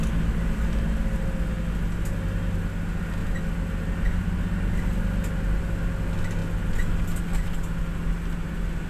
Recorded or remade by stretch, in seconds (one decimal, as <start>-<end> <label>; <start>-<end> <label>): 0.0-8.9 recorded